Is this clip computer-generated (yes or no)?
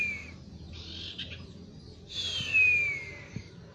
no